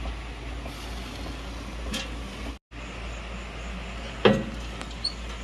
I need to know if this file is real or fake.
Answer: real